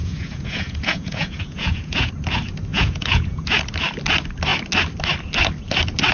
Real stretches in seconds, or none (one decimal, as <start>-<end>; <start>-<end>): 2.1-2.7; 3.6-6.1